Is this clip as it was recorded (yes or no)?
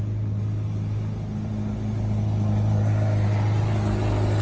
yes